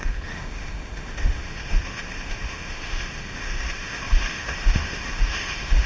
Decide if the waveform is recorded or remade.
remade